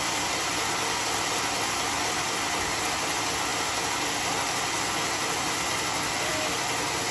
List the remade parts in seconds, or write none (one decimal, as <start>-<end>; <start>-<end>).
none